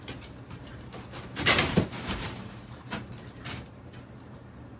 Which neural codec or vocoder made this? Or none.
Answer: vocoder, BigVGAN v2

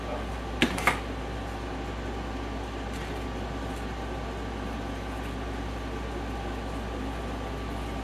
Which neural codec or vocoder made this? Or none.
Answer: none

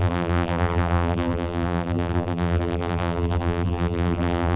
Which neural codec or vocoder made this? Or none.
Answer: vocoder, BigVGAN v2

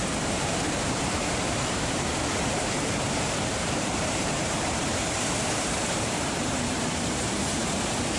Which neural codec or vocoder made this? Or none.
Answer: vocoder, BigVGAN v2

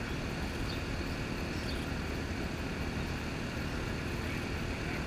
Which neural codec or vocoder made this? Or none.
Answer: none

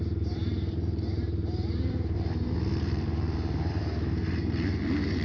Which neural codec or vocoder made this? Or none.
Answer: vocoder, BigVGAN v2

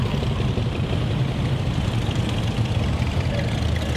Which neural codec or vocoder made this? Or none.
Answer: vocoder, BigVGAN v2